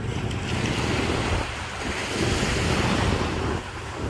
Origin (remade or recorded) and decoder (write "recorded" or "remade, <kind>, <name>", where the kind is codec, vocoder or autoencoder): recorded